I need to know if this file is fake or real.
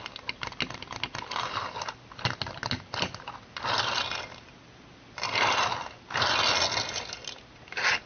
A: real